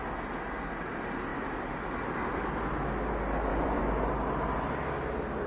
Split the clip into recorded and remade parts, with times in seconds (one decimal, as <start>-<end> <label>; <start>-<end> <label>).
0.0-3.5 recorded; 3.5-4.1 remade; 4.1-5.5 recorded